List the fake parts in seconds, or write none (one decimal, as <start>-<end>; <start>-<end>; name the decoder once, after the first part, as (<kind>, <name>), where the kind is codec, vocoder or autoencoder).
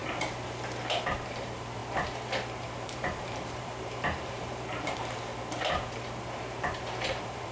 1.3-1.8 (vocoder, BigVGAN v2); 2.6-5.3; 7.0-7.5